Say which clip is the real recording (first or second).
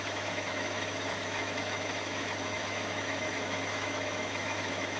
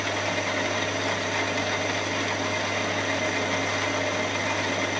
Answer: second